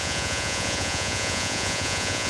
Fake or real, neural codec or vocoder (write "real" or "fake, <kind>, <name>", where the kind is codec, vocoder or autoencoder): fake, vocoder, Vocos